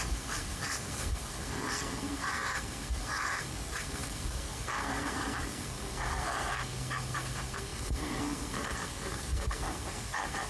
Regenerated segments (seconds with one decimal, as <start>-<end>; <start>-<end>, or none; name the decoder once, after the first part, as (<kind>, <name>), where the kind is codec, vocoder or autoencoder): 0.0-10.5 (codec, SNAC)